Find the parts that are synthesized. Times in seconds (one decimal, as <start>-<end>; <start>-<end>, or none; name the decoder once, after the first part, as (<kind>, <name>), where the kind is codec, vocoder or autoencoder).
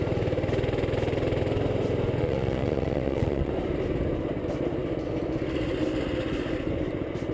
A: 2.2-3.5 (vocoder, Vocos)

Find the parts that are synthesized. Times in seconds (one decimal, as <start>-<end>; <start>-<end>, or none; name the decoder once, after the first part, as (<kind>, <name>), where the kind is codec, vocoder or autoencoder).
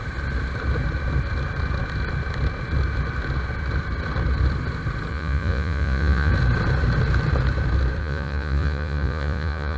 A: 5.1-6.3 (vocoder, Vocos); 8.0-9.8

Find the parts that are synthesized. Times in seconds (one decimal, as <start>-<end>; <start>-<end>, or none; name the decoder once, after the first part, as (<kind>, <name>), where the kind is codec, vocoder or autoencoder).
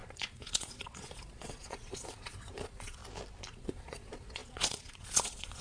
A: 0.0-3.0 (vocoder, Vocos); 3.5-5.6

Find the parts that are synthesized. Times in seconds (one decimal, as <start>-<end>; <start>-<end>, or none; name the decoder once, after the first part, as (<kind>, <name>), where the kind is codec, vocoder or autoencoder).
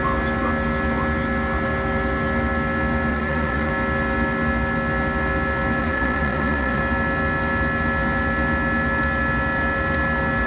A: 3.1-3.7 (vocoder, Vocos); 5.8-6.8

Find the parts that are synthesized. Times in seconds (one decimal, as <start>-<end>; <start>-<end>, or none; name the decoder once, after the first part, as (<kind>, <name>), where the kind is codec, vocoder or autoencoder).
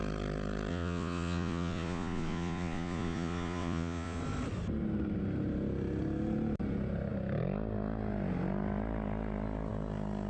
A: 0.7-4.2 (vocoder, Vocos)